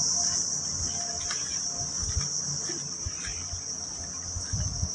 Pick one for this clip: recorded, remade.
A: recorded